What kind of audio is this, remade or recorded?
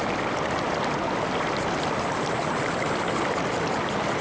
recorded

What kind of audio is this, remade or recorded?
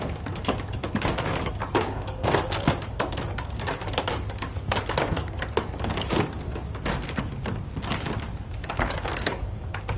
remade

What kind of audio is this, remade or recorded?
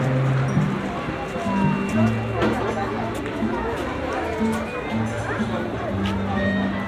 recorded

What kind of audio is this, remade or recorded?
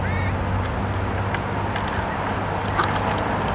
recorded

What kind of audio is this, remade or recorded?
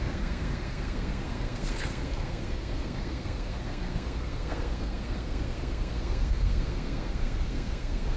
remade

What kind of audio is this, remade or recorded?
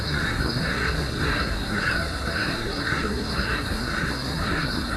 remade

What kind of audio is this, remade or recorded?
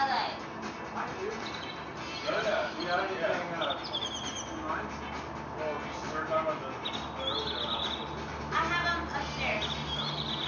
recorded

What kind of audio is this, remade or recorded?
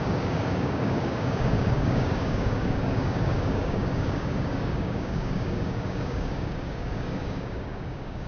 remade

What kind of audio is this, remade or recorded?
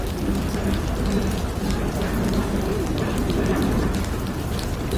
recorded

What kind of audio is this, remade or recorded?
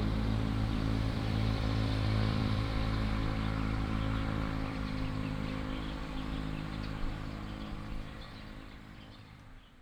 remade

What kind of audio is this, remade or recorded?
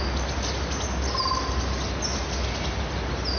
recorded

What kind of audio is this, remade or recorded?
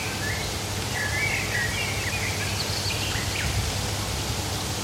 recorded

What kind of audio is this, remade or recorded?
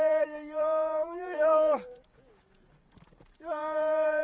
remade